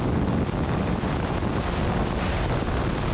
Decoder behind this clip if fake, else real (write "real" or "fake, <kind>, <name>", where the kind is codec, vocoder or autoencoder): real